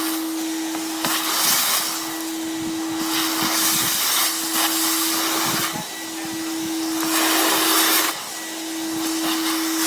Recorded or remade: recorded